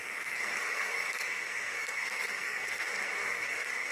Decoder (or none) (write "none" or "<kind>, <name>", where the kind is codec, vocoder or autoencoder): codec, SNAC